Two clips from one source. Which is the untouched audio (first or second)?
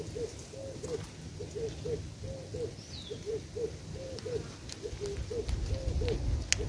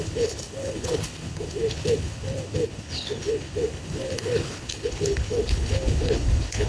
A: first